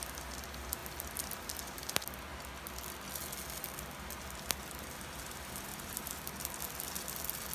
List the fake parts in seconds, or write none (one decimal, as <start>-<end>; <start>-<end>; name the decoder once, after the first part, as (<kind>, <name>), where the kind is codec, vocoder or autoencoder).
5.7-6.5 (vocoder, BigVGAN v2)